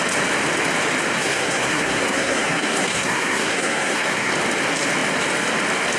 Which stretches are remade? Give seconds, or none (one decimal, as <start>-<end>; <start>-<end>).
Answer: 1.2-4.3